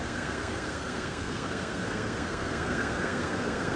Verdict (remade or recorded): remade